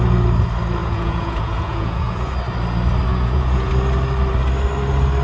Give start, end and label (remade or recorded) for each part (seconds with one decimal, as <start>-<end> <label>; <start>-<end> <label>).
0.0-0.8 recorded; 0.8-2.3 remade; 2.3-3.1 recorded; 3.1-3.7 remade; 3.7-5.2 recorded